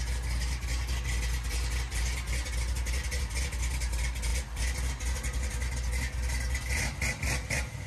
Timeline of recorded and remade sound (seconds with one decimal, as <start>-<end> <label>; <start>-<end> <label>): 0.0-7.9 recorded